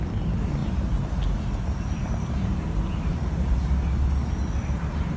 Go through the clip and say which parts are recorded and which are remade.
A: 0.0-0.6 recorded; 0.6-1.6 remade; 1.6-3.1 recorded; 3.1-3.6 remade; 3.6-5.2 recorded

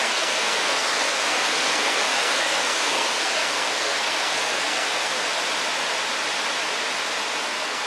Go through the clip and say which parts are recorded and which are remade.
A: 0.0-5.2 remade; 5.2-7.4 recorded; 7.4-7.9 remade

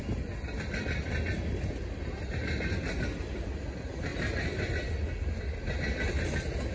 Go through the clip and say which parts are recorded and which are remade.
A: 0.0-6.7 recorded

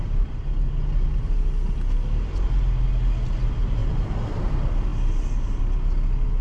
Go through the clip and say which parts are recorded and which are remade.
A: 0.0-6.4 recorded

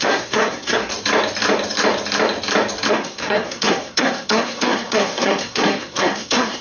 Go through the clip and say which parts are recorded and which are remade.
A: 0.0-0.9 remade; 0.9-2.9 recorded; 2.9-6.6 remade